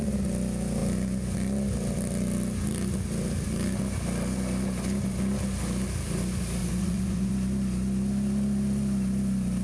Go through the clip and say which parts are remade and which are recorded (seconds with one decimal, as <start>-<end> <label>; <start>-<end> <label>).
0.0-6.6 recorded; 6.6-7.3 remade; 7.3-9.6 recorded